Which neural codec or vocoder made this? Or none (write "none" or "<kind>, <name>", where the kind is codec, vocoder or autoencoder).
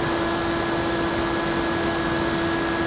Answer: none